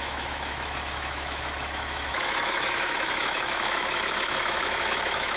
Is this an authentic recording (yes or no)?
no